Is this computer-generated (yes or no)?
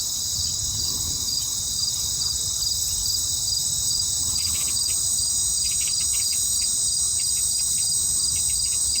yes